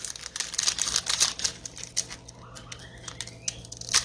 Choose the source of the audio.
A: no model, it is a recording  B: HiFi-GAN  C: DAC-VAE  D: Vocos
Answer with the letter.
A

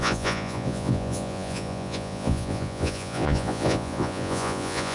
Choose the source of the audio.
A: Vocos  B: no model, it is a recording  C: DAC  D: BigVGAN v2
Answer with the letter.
A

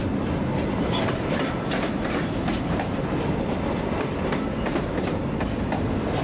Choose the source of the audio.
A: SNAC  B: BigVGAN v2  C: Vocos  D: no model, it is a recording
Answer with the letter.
D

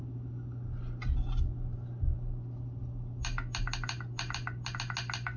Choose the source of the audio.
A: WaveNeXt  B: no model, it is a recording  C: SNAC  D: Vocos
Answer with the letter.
B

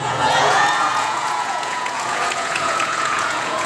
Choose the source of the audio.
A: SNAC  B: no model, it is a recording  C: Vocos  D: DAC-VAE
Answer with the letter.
C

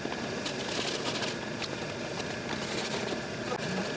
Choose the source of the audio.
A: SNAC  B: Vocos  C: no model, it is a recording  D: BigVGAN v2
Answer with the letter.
C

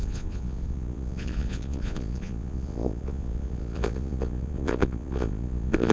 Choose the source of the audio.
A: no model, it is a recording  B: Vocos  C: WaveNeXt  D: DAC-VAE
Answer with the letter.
B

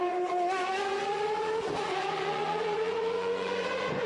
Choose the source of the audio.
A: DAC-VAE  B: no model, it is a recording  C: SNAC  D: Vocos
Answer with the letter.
D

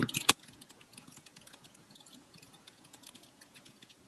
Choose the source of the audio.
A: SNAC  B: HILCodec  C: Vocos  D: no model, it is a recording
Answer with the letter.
C